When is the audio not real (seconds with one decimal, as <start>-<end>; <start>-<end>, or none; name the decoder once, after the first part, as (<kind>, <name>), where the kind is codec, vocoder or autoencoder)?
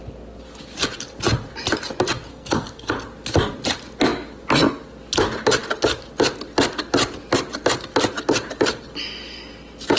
2.3-2.9 (codec, SNAC)